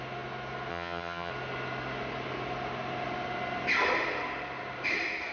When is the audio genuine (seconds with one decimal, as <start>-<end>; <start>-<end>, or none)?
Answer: 0.0-0.7; 1.3-5.3